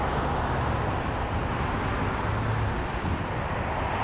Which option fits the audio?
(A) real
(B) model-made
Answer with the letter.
A